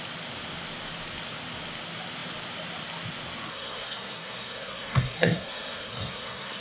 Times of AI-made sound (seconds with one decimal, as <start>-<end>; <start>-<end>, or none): 3.5-6.6